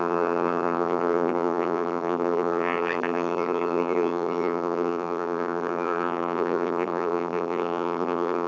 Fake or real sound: fake